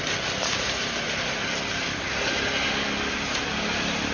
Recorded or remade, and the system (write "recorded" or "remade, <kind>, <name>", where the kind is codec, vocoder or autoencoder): recorded